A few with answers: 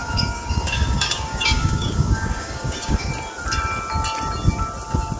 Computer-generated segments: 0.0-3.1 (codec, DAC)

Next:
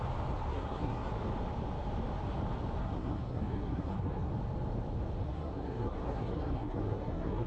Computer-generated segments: 0.5-1.1 (codec, SNAC); 2.8-4.3; 5.2-7.5

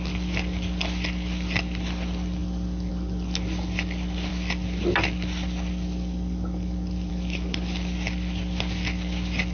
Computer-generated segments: none

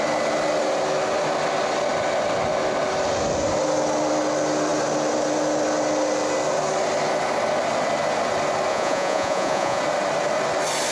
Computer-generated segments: 8.7-9.8 (vocoder, Vocos)

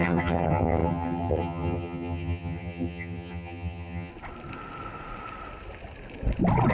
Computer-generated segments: 0.0-4.1 (vocoder, HiFi-GAN)

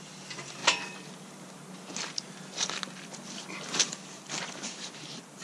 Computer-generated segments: none

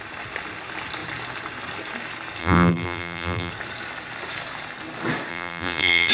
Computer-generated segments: 2.4-3.5 (vocoder, BigVGAN v2); 5.3-6.1